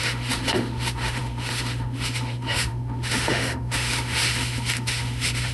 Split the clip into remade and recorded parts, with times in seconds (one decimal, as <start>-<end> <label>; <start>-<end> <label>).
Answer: 0.0-5.5 remade